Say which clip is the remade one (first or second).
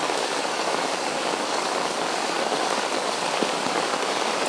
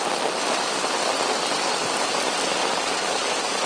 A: first